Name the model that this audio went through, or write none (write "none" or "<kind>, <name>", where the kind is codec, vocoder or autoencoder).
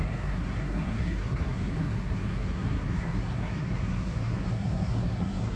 codec, SNAC